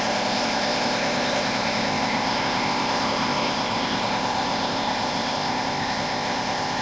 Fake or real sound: fake